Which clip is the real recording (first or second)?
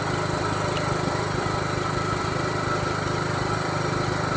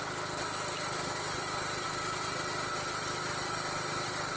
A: second